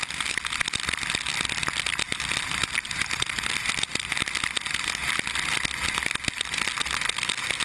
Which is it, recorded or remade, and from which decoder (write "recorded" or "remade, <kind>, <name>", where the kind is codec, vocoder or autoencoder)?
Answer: recorded